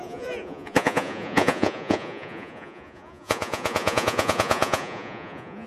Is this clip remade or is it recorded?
remade